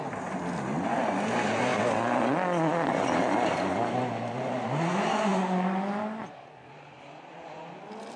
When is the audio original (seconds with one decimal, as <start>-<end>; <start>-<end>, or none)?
0.0-8.2